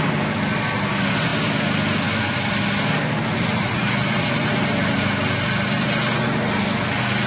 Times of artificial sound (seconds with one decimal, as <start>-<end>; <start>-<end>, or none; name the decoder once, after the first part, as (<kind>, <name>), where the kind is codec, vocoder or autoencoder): none